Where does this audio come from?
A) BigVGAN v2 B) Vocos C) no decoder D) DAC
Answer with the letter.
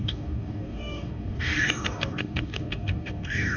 D